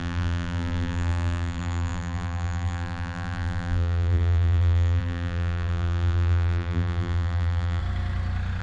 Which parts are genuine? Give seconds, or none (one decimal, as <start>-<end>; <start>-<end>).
7.8-8.6